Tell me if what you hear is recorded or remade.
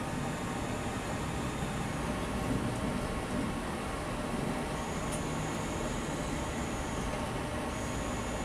recorded